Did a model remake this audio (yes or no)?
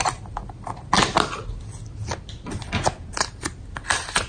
no